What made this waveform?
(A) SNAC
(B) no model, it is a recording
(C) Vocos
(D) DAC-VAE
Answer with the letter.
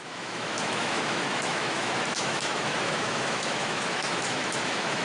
D